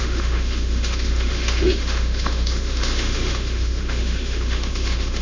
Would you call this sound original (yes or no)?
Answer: no